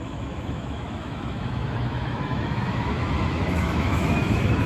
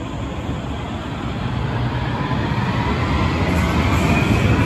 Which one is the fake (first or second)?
first